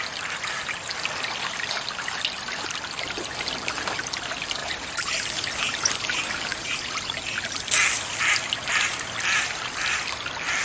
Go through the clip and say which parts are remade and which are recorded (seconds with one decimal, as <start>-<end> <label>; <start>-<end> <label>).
0.0-4.6 recorded; 4.6-5.3 remade; 5.3-6.5 recorded; 6.5-7.1 remade; 7.1-10.6 recorded